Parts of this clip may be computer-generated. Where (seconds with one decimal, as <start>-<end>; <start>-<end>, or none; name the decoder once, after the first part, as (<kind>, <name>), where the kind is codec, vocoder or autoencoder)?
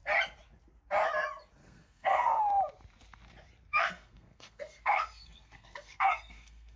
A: 1.6-2.4 (codec, SNAC); 3.7-6.8